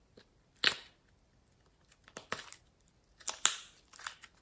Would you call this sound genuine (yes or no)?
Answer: yes